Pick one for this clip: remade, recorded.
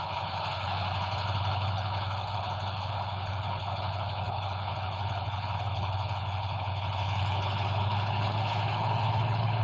remade